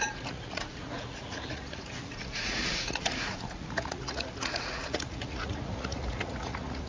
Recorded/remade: remade